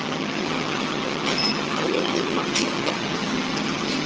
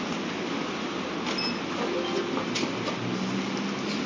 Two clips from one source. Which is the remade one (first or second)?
first